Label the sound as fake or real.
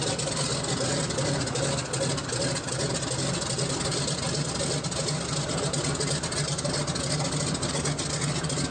real